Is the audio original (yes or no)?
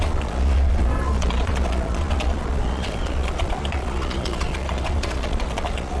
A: no